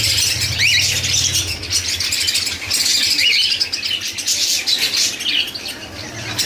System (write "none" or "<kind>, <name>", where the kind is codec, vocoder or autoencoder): none